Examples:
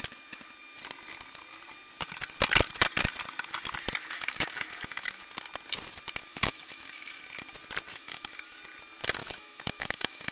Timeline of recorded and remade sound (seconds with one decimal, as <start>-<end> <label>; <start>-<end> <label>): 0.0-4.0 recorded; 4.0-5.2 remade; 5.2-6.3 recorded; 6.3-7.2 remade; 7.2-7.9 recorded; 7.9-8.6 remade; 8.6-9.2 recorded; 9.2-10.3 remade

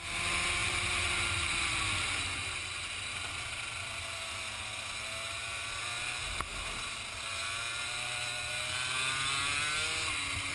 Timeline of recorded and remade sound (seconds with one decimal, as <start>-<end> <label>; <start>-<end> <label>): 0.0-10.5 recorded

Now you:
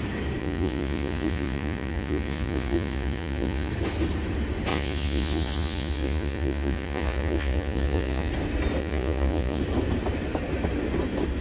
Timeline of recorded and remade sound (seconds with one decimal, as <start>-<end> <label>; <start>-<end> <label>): 0.0-0.4 recorded; 0.4-3.7 remade; 3.7-4.7 recorded; 4.7-8.3 remade; 8.3-8.8 recorded; 8.8-9.6 remade; 9.6-11.4 recorded